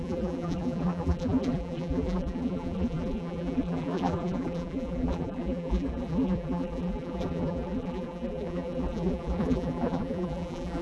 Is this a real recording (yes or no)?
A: no